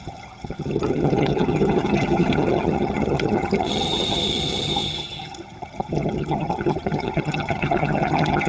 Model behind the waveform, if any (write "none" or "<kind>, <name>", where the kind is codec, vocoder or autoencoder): vocoder, HiFi-GAN